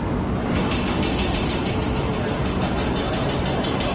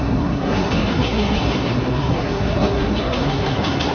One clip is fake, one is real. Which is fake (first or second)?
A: second